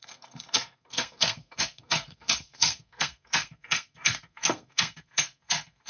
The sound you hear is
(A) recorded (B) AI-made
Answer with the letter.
B